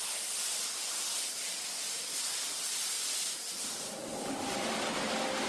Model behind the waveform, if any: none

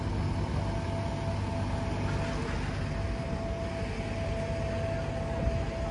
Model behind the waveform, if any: none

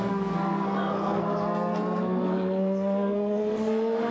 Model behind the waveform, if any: codec, SNAC